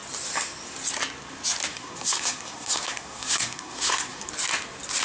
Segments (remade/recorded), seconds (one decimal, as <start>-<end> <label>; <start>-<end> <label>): 0.0-1.7 recorded; 1.7-4.3 remade; 4.3-5.0 recorded